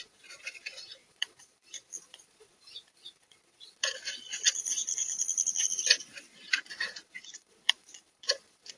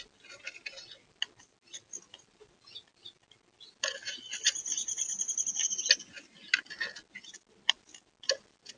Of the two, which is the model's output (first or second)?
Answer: first